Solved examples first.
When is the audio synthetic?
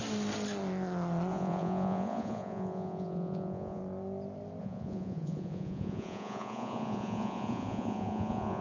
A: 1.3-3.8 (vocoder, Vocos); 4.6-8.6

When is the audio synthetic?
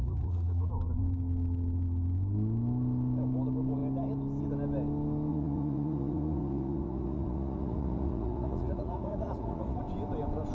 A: 0.0-0.7 (vocoder, Vocos); 5.3-9.8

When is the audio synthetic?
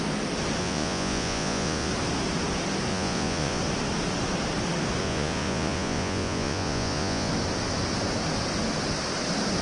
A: 0.6-1.9 (vocoder, Vocos); 2.9-3.6; 5.0-7.3